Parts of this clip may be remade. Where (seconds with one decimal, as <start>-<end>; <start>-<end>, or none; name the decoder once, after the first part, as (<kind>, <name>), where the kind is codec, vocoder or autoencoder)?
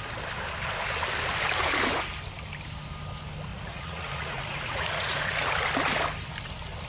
3.5-5.5 (vocoder, Vocos)